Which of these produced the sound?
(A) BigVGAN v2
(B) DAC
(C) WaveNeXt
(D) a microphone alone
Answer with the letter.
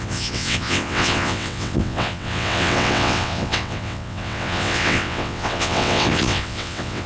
C